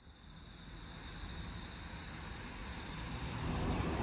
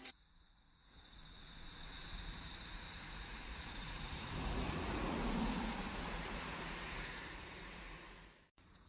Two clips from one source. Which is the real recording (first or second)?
first